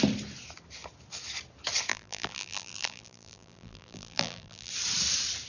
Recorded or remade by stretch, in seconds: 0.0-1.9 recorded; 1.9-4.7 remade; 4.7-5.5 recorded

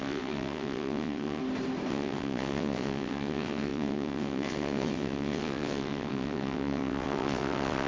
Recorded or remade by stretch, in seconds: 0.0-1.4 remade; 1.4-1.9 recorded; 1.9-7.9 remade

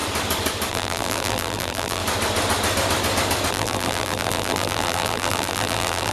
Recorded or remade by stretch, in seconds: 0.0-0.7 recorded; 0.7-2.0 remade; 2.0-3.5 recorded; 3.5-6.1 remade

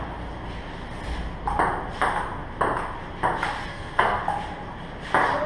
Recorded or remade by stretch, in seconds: 0.0-3.7 recorded; 3.7-4.2 remade; 4.2-5.5 recorded